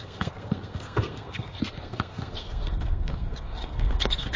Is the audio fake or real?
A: fake